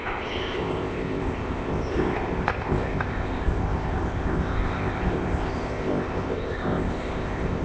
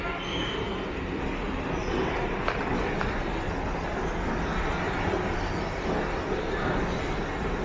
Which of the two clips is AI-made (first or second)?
first